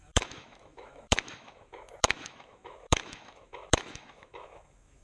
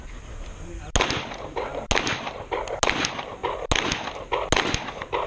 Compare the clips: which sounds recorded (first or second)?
second